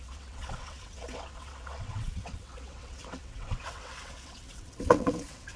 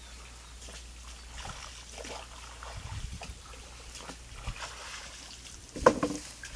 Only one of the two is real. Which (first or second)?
second